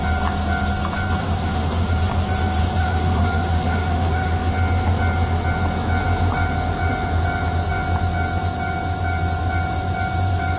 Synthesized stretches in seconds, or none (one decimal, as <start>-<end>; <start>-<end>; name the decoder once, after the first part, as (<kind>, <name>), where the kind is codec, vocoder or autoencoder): 1.2-1.9 (autoencoder, DAC-VAE); 2.6-4.5